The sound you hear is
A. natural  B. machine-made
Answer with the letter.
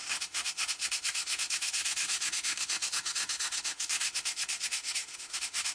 B